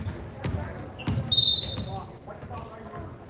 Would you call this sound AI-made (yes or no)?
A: no